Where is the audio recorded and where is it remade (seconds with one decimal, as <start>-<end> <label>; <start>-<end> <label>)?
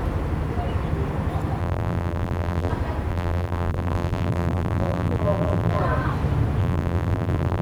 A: 0.0-1.6 recorded; 1.6-2.7 remade; 2.7-3.1 recorded; 3.1-5.8 remade; 5.8-6.6 recorded; 6.6-7.6 remade